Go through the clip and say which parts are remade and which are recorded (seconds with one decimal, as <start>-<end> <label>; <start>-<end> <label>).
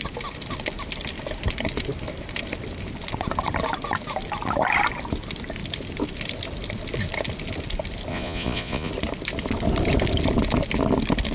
0.0-8.1 recorded; 8.1-8.9 remade; 8.9-11.3 recorded